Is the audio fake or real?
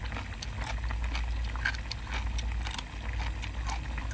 real